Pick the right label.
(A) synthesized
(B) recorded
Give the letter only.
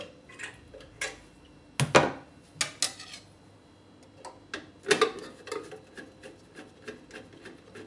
B